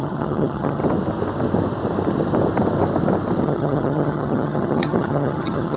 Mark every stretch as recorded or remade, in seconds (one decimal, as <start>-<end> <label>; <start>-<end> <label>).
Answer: 0.0-0.8 remade; 0.8-3.4 recorded; 3.4-5.8 remade